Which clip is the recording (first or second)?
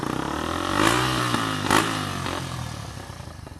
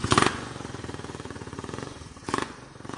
first